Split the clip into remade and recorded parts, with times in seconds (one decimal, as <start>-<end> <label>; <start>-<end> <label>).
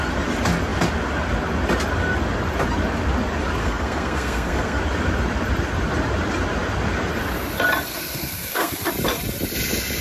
0.0-3.6 recorded; 3.6-4.8 remade; 4.8-7.9 recorded; 7.9-8.9 remade; 8.9-10.0 recorded